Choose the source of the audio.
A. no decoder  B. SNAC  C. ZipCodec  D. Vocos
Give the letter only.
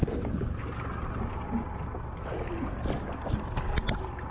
A